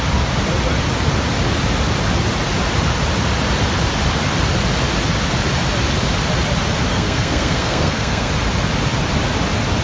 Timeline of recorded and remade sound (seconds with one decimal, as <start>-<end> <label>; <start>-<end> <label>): 0.0-6.9 recorded; 6.9-8.3 remade; 8.3-9.8 recorded